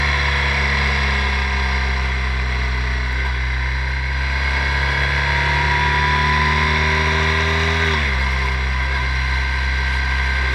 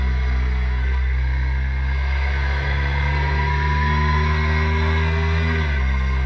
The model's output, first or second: second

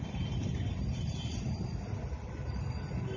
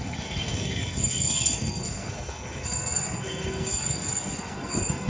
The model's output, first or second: second